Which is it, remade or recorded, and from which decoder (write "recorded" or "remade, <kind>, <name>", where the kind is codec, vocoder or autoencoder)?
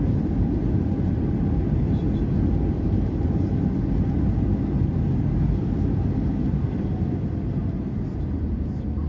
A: recorded